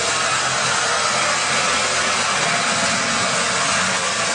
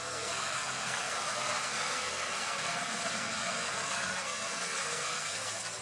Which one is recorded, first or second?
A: first